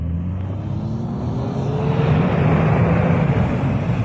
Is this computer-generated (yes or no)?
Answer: no